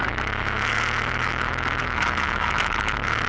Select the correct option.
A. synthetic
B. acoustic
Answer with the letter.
A